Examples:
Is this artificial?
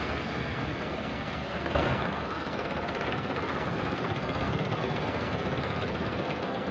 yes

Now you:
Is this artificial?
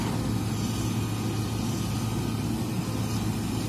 no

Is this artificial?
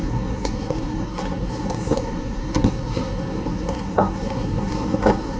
yes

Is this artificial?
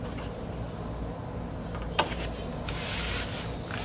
no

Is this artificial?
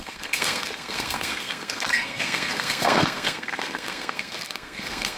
yes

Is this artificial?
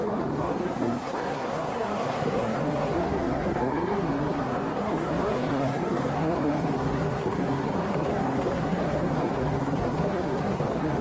yes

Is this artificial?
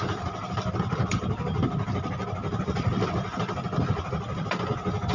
no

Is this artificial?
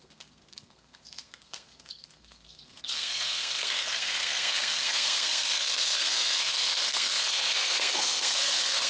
yes